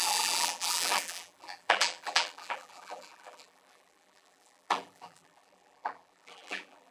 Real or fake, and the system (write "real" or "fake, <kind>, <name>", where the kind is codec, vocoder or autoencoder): fake, vocoder, BigVGAN v2